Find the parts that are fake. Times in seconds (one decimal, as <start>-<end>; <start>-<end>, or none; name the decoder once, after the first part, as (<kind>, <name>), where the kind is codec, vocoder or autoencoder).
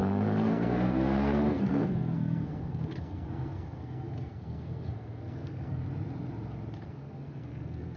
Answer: 0.0-5.8 (codec, SNAC); 6.9-8.0